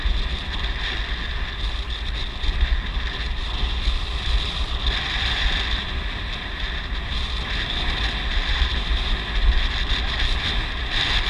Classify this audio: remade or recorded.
recorded